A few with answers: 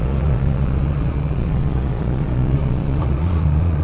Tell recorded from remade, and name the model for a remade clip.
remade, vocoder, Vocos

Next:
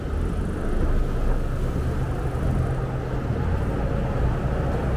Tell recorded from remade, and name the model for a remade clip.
recorded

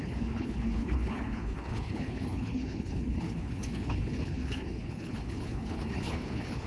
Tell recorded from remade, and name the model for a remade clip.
remade, codec, HILCodec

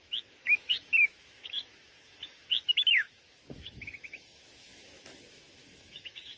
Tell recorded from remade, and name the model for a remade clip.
remade, autoencoder, DAC-VAE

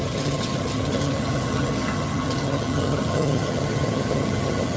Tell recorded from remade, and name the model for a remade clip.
remade, vocoder, HiFi-GAN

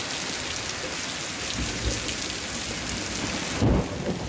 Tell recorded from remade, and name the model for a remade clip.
recorded